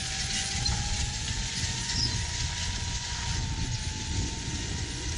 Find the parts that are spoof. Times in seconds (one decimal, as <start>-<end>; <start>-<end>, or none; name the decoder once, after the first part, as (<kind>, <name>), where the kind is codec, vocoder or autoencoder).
0.0-5.2 (vocoder, Vocos)